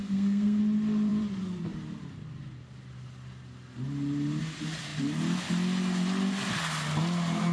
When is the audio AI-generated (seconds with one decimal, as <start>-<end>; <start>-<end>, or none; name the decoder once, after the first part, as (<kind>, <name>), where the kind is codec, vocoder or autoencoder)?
0.0-0.6 (codec, SNAC)